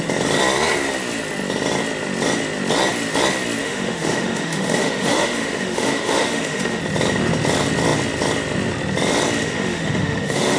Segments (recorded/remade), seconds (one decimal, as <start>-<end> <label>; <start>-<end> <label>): 0.0-3.6 recorded; 3.6-6.8 remade; 6.8-9.4 recorded; 9.4-10.6 remade